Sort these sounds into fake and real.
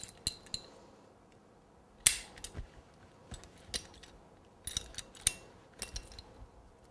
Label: real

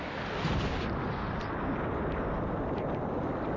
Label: real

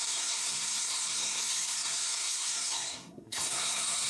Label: fake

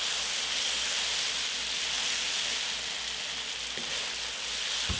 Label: real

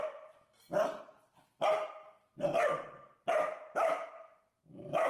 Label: real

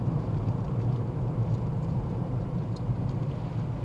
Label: fake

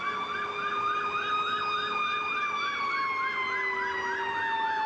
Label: real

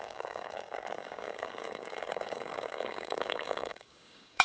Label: fake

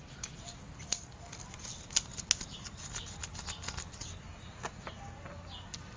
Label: real